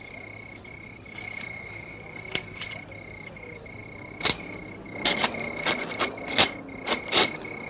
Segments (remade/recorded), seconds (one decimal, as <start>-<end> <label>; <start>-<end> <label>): 0.0-3.8 remade; 3.8-7.0 recorded; 7.0-7.7 remade